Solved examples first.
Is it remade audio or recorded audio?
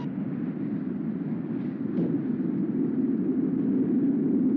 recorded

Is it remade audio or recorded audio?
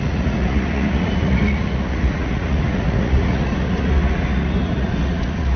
remade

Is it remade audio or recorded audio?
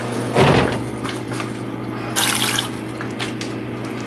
recorded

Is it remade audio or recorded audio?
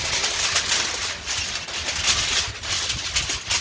recorded